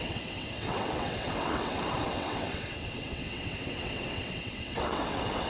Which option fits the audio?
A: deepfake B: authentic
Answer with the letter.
A